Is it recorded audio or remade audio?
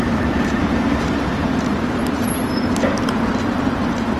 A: remade